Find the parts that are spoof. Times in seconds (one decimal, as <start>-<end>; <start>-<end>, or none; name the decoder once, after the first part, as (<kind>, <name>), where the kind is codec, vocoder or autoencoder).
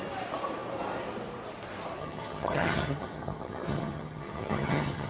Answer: 2.0-5.1 (vocoder, HiFi-GAN)